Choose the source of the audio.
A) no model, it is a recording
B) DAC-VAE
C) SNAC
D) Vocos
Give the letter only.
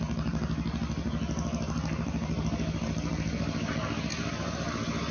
A